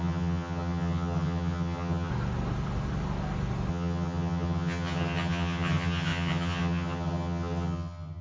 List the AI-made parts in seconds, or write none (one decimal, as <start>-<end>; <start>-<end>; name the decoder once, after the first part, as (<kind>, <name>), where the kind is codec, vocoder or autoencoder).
0.0-2.1 (vocoder, HiFi-GAN); 3.7-8.2